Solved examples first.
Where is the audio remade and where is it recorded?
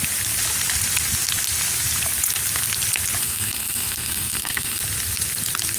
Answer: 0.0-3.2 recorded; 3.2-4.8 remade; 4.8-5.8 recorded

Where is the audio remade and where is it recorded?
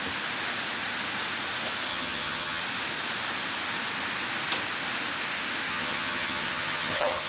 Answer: 0.0-1.9 recorded; 1.9-2.6 remade; 2.6-5.7 recorded; 5.7-7.3 remade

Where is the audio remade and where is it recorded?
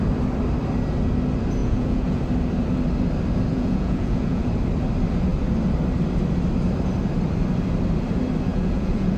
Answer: 0.0-1.6 recorded; 1.6-2.2 remade; 2.2-3.5 recorded; 3.5-4.5 remade; 4.5-8.5 recorded; 8.5-9.2 remade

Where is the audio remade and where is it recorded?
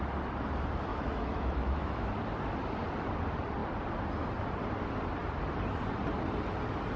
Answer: 0.0-0.9 recorded; 0.9-2.1 remade; 2.1-7.0 recorded